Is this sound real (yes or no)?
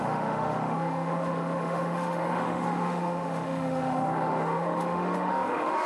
no